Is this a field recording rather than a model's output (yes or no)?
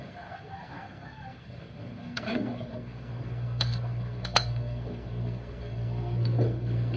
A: no